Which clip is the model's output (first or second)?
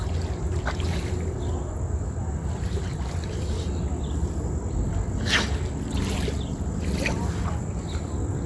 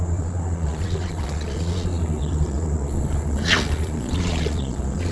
second